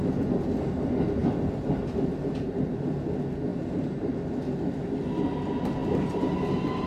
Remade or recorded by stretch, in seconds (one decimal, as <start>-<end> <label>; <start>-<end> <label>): 0.0-1.2 recorded; 1.2-2.9 remade; 2.9-3.5 recorded; 3.5-4.4 remade; 4.4-6.9 recorded

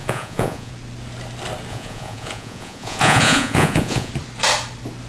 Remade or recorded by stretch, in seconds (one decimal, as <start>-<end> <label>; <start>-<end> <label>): 0.0-0.7 remade; 0.7-1.7 recorded; 1.7-4.1 remade; 4.1-5.1 recorded

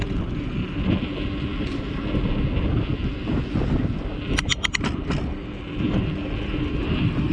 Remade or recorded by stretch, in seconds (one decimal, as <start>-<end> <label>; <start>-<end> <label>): 0.0-7.3 recorded

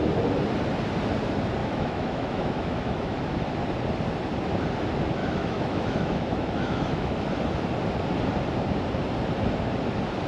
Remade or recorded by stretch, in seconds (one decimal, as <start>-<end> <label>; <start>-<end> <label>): 0.0-1.6 recorded; 1.6-3.2 remade; 3.2-5.2 recorded; 5.2-7.3 remade; 7.3-10.3 recorded

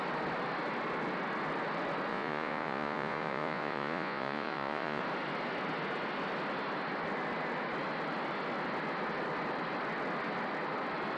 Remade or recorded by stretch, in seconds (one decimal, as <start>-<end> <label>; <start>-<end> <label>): 0.0-2.1 recorded; 2.1-5.0 remade; 5.0-11.2 recorded

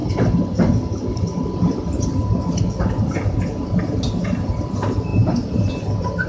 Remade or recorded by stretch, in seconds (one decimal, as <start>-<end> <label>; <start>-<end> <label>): 0.0-6.3 recorded

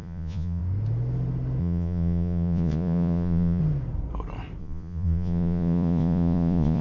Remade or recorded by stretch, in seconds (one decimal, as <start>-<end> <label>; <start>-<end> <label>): 0.0-0.6 remade; 0.6-1.6 recorded; 1.6-3.6 remade; 3.6-4.6 recorded; 4.6-6.8 remade